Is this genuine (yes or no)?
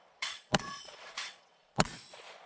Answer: no